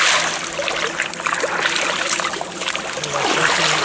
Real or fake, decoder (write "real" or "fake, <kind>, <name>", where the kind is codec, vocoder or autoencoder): real